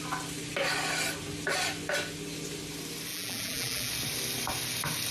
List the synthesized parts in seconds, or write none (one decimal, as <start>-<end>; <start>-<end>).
3.1-3.9